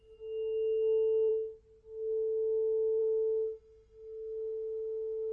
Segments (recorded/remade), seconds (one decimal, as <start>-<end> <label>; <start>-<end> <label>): 0.0-1.3 remade; 1.3-3.0 recorded; 3.0-5.3 remade